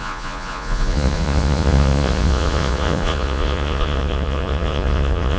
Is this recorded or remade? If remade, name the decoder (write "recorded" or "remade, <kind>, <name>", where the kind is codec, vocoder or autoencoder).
remade, vocoder, Vocos